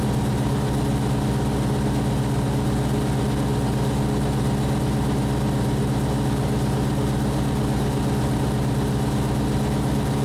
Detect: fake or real real